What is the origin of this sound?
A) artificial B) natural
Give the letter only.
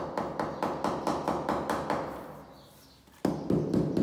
B